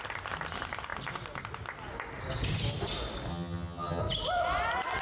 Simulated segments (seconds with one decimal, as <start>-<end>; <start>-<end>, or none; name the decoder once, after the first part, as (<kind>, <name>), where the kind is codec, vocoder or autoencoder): 3.3-4.0 (vocoder, HiFi-GAN)